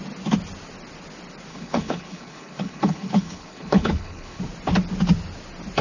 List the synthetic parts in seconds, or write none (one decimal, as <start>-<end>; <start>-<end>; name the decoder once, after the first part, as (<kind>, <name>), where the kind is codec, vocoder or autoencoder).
1.5-4.4 (codec, HILCodec)